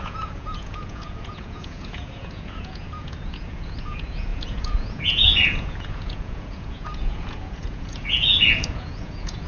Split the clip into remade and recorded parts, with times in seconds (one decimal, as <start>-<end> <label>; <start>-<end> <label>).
0.0-9.5 remade